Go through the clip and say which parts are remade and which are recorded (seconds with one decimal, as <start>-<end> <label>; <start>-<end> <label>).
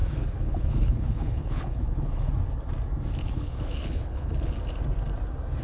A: 0.0-2.3 remade; 2.3-3.2 recorded; 3.2-4.5 remade; 4.5-5.6 recorded